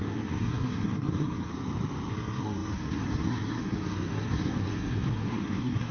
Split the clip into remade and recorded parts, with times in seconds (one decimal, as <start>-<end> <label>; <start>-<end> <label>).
0.0-1.5 remade; 1.5-2.1 recorded; 2.1-5.9 remade